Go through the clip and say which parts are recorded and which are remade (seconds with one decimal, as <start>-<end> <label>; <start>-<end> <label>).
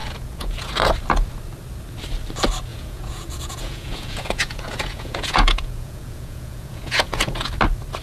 0.0-0.7 remade; 0.7-2.7 recorded; 2.7-7.5 remade; 7.5-8.0 recorded